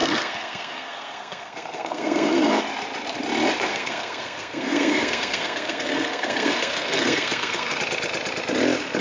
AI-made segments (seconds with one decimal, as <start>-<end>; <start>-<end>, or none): 0.0-2.6; 3.7-7.8